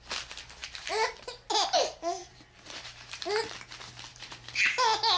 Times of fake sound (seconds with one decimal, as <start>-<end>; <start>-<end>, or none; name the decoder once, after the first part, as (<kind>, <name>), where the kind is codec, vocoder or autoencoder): 0.6-1.1 (vocoder, BigVGAN v2); 2.2-3.3; 4.1-4.6